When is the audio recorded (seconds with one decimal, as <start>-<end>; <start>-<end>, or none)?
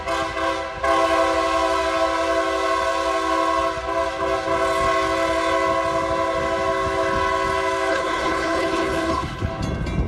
0.0-7.9; 9.5-10.1